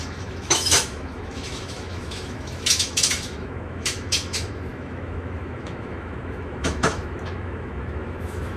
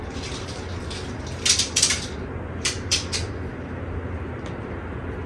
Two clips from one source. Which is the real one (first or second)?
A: second